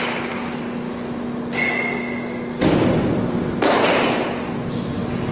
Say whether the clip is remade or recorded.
recorded